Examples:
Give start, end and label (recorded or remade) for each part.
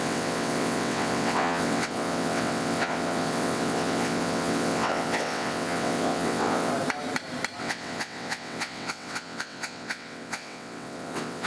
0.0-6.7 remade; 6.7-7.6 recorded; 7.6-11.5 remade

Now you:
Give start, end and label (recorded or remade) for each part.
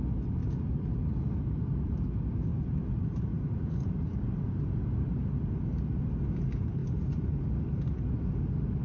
0.0-0.4 recorded; 0.4-0.9 remade; 0.9-2.5 recorded; 2.5-6.0 remade; 6.0-6.8 recorded; 6.8-7.9 remade; 7.9-8.8 recorded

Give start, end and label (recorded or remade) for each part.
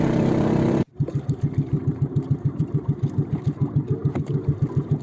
0.0-5.0 remade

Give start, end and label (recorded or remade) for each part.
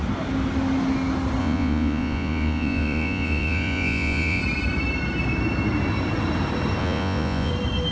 0.0-1.4 recorded; 1.4-4.4 remade; 4.4-6.8 recorded; 6.8-7.5 remade; 7.5-7.9 recorded